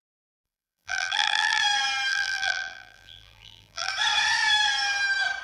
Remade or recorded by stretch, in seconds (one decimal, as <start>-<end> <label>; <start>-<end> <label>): 0.0-1.6 remade; 1.6-2.1 recorded; 2.1-3.9 remade; 3.9-5.4 recorded